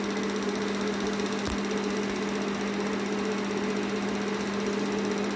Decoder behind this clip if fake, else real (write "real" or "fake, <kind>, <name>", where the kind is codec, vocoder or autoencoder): real